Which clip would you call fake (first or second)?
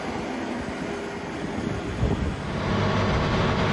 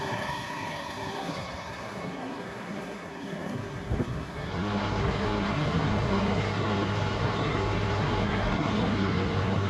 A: second